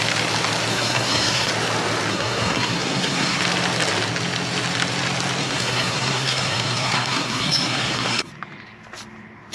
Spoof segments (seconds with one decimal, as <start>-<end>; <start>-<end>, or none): 0.7-1.5; 2.1-3.4; 5.4-8.3